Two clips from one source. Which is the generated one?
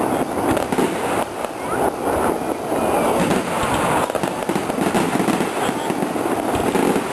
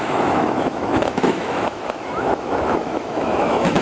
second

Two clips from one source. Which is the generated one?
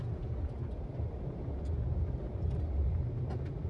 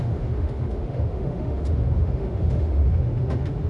second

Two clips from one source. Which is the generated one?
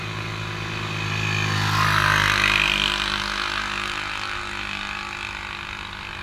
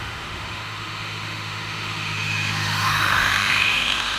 second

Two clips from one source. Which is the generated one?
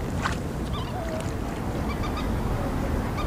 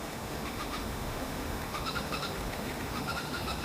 second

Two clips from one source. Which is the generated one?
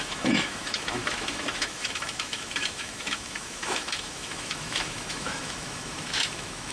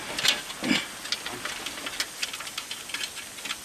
first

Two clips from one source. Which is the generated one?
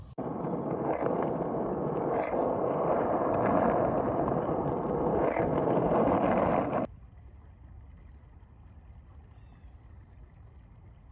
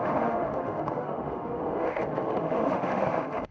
second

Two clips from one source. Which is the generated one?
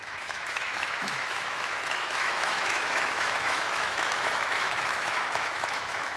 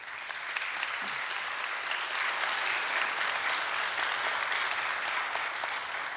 first